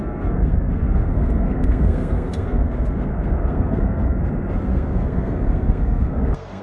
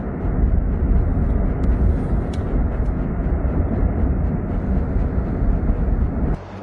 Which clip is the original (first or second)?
second